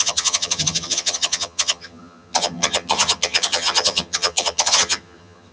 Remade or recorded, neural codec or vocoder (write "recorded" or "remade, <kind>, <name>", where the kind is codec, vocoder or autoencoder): remade, vocoder, HiFi-GAN